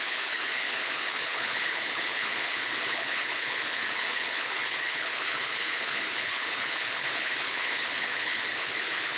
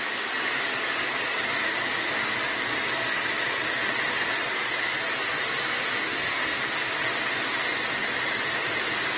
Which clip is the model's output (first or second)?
first